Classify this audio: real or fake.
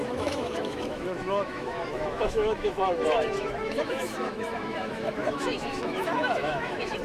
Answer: fake